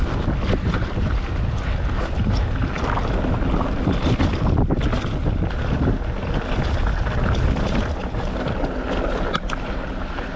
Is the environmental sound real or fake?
real